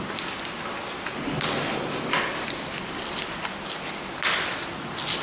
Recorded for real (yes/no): yes